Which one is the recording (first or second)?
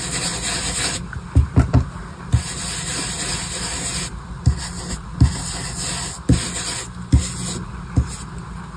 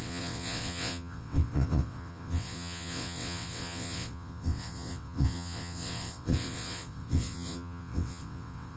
first